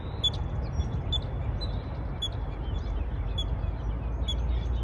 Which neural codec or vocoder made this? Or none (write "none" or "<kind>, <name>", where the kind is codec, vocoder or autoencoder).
none